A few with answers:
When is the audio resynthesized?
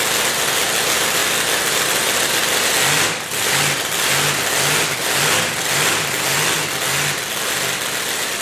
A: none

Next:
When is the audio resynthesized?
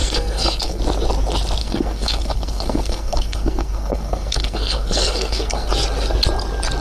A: 0.0-0.8; 1.6-5.7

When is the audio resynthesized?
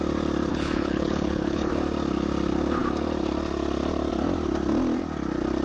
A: 0.5-1.7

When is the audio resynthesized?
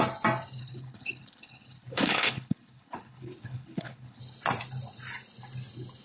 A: 0.6-4.2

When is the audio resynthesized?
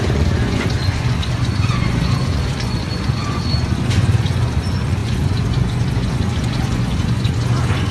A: 0.0-7.9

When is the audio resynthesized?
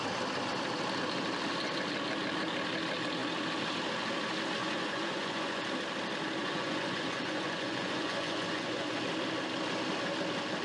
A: 4.6-5.6; 6.4-9.0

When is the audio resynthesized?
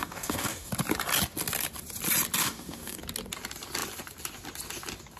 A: 0.0-0.7; 2.4-3.0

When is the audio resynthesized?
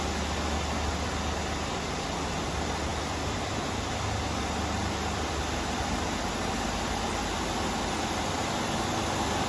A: none